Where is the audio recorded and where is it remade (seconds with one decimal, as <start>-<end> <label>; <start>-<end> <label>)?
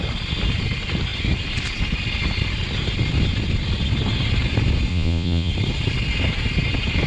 0.0-4.9 recorded; 4.9-5.5 remade; 5.5-7.1 recorded